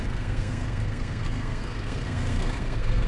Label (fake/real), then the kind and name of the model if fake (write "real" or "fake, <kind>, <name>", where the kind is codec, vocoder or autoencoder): fake, codec, SNAC